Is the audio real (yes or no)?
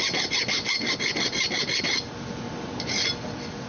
yes